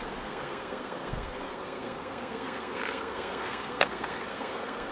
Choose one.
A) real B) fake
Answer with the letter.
B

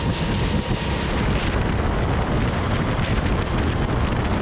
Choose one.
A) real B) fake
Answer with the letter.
A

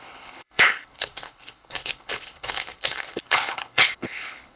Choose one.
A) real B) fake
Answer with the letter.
B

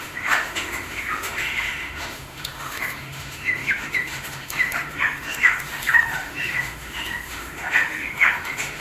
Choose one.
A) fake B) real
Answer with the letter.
A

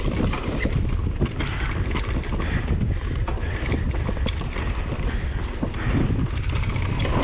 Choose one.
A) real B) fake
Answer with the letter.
A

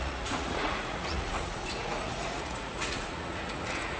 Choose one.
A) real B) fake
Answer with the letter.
B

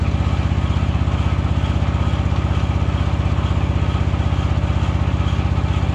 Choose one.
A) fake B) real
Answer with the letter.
B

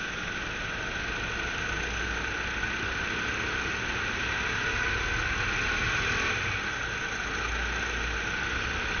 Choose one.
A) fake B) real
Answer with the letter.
B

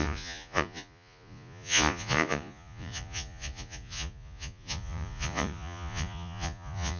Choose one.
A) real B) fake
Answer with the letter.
B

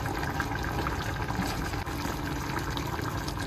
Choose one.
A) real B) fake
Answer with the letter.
A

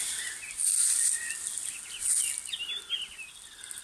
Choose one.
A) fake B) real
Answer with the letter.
B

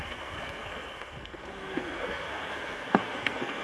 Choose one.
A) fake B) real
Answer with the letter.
A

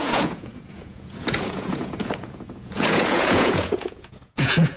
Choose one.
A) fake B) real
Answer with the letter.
A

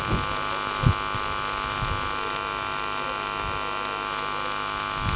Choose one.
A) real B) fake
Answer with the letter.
A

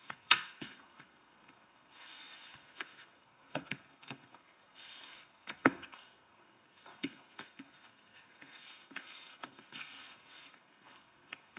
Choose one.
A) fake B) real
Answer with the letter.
A